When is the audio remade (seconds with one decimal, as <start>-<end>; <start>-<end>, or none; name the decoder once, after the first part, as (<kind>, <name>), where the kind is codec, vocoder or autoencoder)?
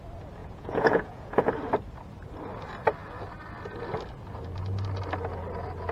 0.4-1.5 (vocoder, Vocos)